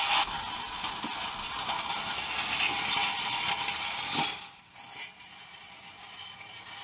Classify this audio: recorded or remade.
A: recorded